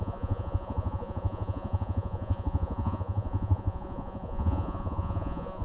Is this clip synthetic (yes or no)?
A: yes